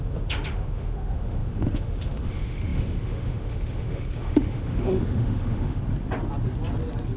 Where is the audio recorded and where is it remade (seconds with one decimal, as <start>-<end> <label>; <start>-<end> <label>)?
0.0-5.8 remade; 5.8-7.2 recorded